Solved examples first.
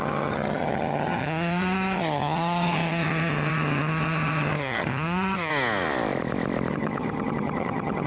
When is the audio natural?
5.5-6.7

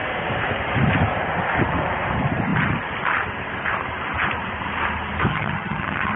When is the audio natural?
0.0-5.3

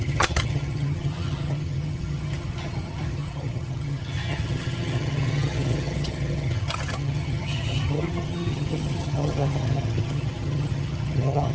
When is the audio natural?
none

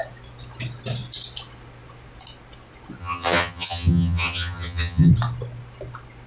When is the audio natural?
0.0-3.0; 5.1-6.3

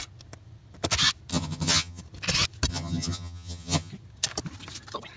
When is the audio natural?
0.0-1.3; 2.0-2.7; 3.9-5.2